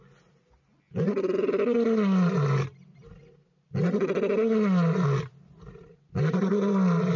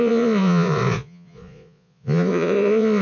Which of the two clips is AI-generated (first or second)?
second